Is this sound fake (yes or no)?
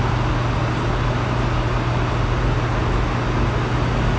no